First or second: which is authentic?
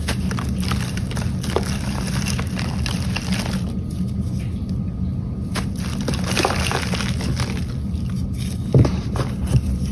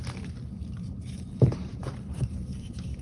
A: first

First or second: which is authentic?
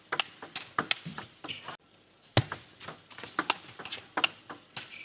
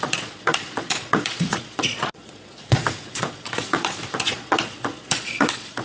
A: first